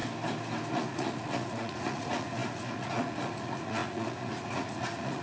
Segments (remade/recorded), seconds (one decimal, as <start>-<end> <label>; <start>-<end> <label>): 0.0-0.7 recorded; 0.7-5.2 remade